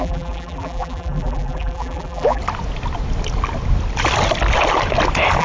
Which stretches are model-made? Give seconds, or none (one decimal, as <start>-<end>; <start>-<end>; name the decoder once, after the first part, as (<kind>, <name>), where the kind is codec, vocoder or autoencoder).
0.0-2.4 (vocoder, BigVGAN v2)